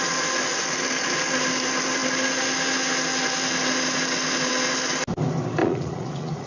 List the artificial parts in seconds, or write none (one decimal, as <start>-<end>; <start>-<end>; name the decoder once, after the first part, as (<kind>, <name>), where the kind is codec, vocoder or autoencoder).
5.6-6.5 (vocoder, Vocos)